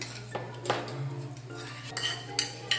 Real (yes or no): yes